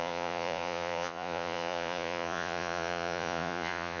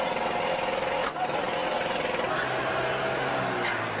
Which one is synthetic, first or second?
first